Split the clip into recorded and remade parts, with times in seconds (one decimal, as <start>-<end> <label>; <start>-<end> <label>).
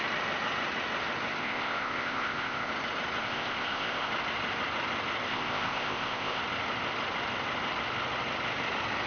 0.0-1.4 recorded; 1.4-2.7 remade; 2.7-3.2 recorded; 3.2-4.1 remade; 4.1-5.3 recorded; 5.3-6.4 remade; 6.4-9.1 recorded